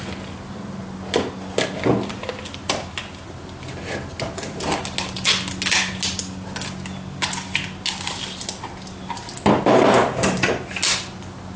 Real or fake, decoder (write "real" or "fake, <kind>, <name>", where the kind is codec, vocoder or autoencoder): real